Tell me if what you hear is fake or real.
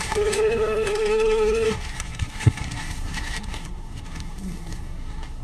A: fake